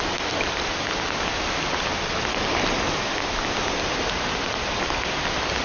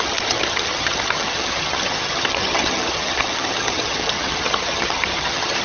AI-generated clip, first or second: second